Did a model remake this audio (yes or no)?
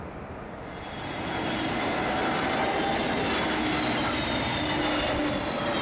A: no